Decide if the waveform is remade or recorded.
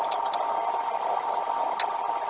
recorded